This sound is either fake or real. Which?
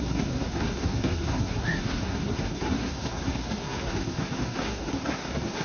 fake